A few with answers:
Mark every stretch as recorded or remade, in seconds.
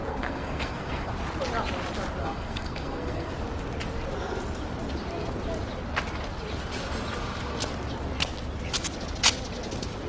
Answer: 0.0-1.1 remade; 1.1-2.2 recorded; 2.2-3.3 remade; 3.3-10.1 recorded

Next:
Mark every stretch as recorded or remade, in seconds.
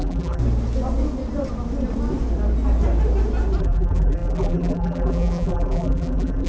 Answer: 0.0-0.4 remade; 0.4-3.6 recorded; 3.6-6.5 remade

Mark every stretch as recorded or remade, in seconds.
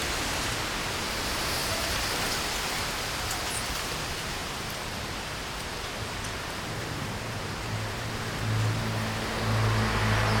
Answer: 0.0-1.6 recorded; 1.6-2.3 remade; 2.3-4.4 recorded; 4.4-8.4 remade; 8.4-10.4 recorded